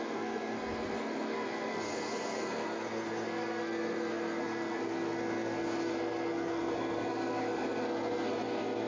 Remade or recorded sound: remade